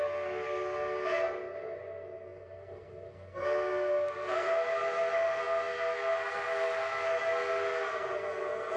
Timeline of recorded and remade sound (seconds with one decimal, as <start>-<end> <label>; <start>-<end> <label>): 0.0-8.8 remade